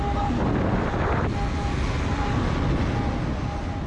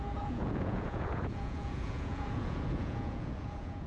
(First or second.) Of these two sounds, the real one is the first